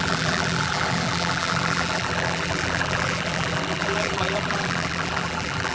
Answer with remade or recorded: remade